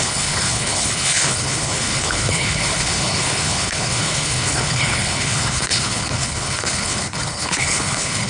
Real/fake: fake